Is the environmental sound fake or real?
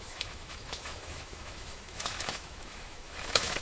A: fake